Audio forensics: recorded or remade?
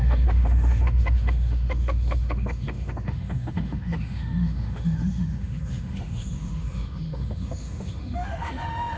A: remade